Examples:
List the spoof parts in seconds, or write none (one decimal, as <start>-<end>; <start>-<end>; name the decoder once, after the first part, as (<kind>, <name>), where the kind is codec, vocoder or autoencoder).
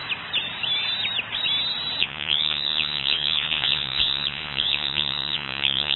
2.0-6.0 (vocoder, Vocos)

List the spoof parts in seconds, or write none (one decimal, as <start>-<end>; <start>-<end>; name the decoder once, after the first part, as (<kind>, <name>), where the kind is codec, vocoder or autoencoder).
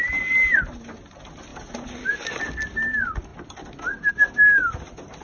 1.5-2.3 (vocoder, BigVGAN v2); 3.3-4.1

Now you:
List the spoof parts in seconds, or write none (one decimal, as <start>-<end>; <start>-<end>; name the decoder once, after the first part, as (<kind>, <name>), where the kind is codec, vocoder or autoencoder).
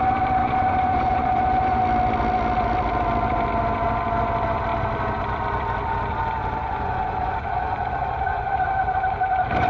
0.4-1.8 (vocoder, Vocos); 6.6-8.6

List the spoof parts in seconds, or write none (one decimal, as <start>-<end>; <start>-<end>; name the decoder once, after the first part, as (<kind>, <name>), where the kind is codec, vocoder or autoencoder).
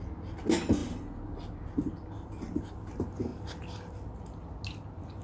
none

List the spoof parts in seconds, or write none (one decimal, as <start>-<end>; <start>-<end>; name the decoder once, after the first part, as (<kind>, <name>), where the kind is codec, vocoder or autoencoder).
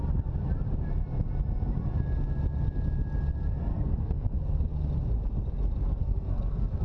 3.7-4.6 (codec, SNAC); 6.0-6.8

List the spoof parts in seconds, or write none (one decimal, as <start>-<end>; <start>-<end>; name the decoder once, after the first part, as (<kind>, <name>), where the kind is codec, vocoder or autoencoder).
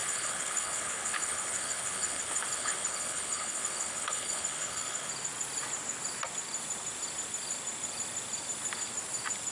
0.0-5.1 (codec, HILCodec)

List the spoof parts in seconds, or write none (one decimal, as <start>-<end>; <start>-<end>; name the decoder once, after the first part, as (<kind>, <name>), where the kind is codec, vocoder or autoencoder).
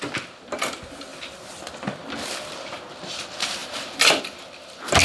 none